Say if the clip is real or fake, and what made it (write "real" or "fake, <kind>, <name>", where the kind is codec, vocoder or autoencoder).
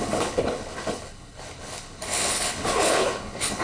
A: fake, codec, HILCodec